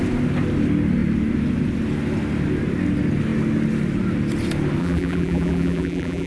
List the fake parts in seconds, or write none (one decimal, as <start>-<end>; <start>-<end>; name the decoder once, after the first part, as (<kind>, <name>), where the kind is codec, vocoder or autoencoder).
4.8-6.3 (vocoder, BigVGAN v2)